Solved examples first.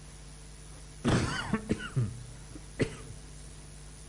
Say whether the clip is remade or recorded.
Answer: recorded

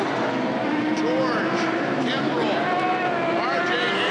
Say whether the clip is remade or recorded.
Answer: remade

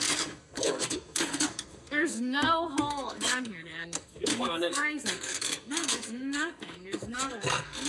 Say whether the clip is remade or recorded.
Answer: remade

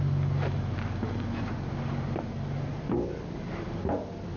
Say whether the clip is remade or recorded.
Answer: recorded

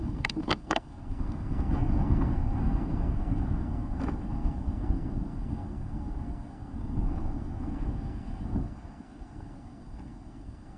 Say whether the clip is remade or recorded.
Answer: remade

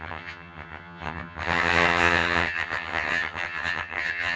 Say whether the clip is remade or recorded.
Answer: remade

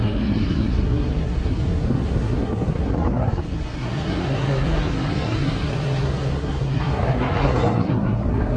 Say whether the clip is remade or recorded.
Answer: remade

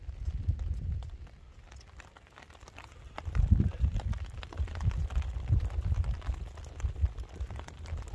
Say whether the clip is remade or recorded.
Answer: recorded